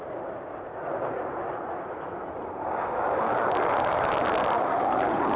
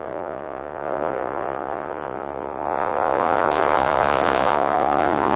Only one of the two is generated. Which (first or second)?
second